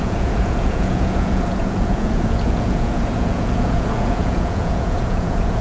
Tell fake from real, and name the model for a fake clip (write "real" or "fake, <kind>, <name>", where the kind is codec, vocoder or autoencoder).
fake, vocoder, Vocos